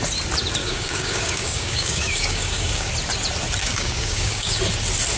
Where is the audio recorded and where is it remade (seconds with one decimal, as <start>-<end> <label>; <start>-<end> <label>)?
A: 0.0-0.6 recorded; 0.6-2.9 remade; 2.9-3.6 recorded; 3.6-4.6 remade; 4.6-5.2 recorded